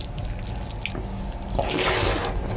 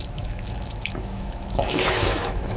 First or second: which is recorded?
first